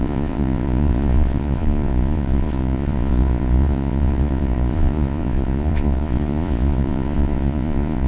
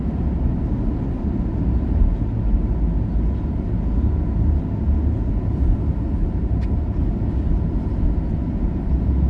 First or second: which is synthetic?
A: first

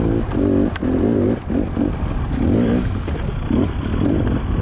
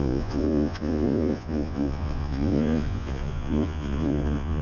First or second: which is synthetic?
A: second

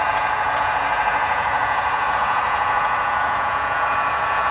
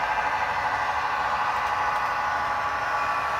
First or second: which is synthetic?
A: first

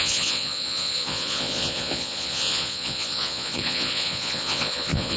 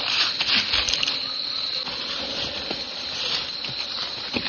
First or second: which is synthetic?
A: first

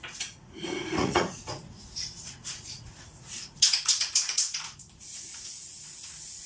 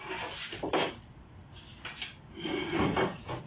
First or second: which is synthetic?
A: first